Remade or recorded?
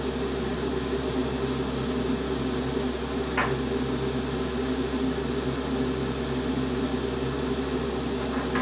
recorded